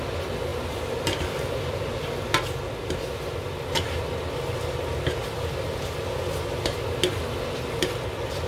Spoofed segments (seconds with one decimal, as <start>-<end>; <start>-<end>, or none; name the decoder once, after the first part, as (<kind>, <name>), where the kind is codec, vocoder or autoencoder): 0.5-1.5 (vocoder, BigVGAN v2)